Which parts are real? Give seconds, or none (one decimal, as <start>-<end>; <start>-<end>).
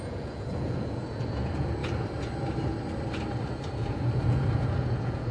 1.8-3.8